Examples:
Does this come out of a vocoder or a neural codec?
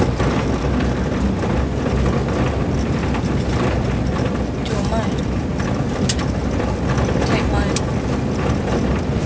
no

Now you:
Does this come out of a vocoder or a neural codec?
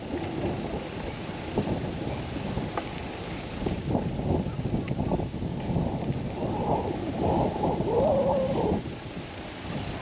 no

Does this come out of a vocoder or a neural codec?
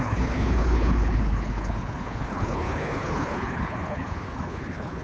yes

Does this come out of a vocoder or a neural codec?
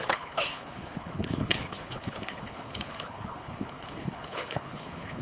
yes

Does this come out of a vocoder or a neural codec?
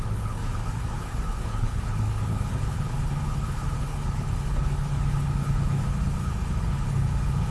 yes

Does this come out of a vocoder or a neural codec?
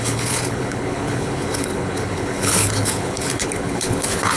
yes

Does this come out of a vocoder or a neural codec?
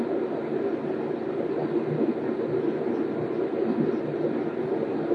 no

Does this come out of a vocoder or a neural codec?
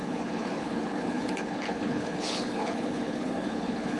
yes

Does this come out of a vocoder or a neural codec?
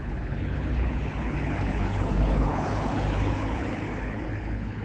yes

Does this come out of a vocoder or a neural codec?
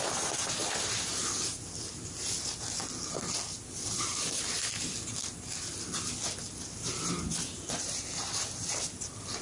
no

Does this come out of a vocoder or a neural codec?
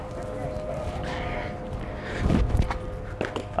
no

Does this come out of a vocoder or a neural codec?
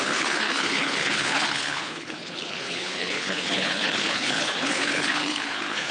yes